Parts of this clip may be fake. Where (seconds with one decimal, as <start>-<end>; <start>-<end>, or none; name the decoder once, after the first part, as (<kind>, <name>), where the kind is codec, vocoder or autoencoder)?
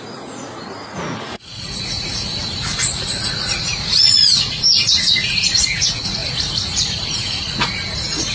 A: 0.0-6.2 (vocoder, Vocos); 7.0-8.3